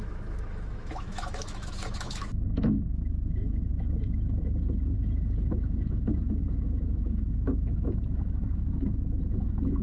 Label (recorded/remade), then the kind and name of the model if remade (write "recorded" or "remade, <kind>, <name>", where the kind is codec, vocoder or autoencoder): remade, autoencoder, DAC-VAE